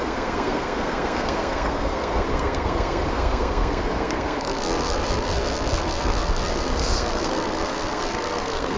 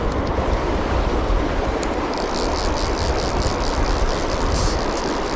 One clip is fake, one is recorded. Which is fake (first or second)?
first